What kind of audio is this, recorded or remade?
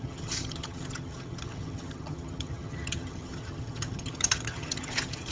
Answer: remade